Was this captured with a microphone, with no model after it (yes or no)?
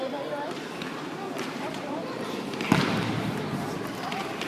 no